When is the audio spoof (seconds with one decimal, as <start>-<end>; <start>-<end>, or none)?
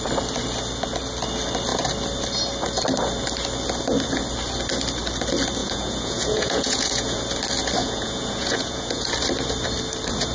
5.6-7.2; 7.8-9.1